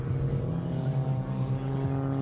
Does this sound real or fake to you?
real